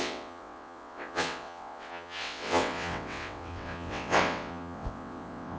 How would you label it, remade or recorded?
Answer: remade